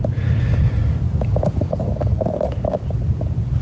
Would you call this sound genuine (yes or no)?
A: yes